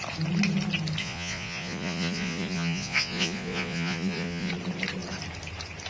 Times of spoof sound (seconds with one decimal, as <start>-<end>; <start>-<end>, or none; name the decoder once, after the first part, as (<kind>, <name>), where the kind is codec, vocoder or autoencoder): 1.0-4.5 (vocoder, Vocos)